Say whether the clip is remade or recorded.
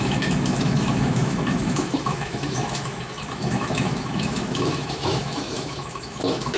remade